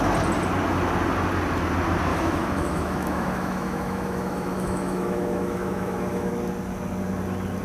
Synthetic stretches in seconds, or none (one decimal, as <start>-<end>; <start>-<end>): 2.1-6.3